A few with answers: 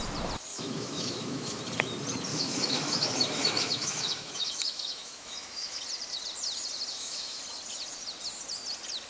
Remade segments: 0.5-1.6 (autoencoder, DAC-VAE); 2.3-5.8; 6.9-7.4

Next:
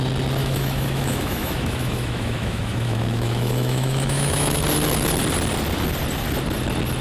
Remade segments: 0.4-4.6 (autoencoder, DAC-VAE)

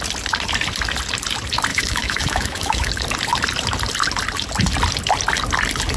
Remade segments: 1.7-2.9 (autoencoder, DAC-VAE)

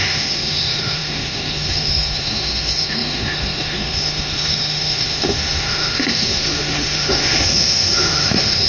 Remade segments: 0.0-8.7 (autoencoder, DAC-VAE)

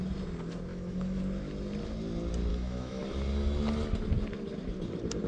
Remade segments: 0.7-1.2 (autoencoder, DAC-VAE); 2.5-3.0

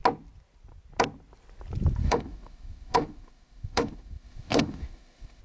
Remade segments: 2.0-5.4 (autoencoder, DAC-VAE)

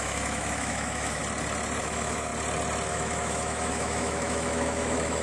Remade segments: 0.0-1.2 (autoencoder, DAC-VAE); 1.8-2.3; 2.9-5.2